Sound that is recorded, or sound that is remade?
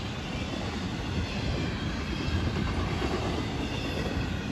recorded